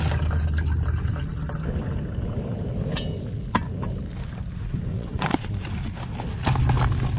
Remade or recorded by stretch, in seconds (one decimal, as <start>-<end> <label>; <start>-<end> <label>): 0.0-4.9 recorded; 4.9-5.5 remade; 5.5-7.2 recorded